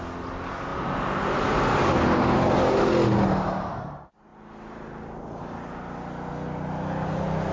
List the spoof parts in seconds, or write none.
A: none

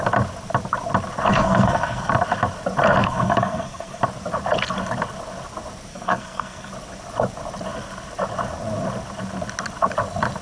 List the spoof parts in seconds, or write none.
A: 1.3-2.1 (codec, SNAC); 3.0-4.0; 5.9-6.7

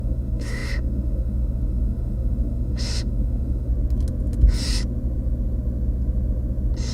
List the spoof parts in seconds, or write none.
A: 0.0-3.7 (autoencoder, DAC-VAE)

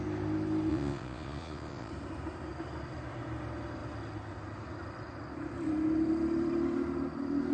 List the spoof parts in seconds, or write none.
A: 0.7-1.9 (vocoder, Vocos)

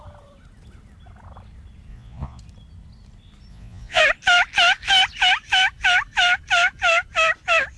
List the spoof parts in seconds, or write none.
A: 1.9-2.4 (vocoder, Vocos); 3.5-4.0